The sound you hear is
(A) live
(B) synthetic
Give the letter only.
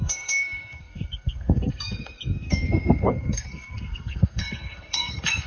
B